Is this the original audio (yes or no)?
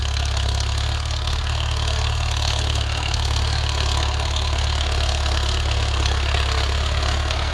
no